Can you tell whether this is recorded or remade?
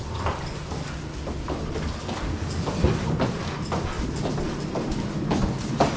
recorded